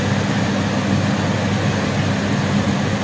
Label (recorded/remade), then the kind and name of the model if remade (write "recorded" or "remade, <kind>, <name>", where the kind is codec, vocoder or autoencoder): recorded